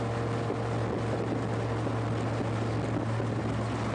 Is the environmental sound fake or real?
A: real